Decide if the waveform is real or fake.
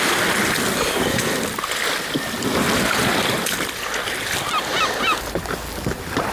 real